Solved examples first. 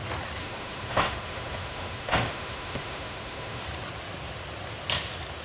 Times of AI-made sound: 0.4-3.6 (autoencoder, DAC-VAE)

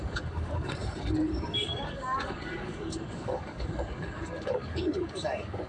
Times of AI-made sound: 0.0-5.7 (codec, DAC)

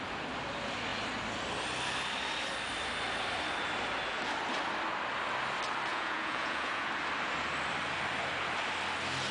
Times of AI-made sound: 5.9-6.9 (vocoder, Vocos)

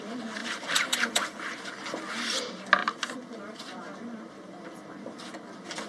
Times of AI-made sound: 0.4-1.7 (vocoder, BigVGAN v2); 2.8-4.0